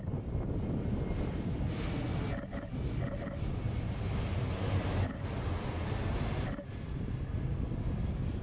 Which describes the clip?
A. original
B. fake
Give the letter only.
A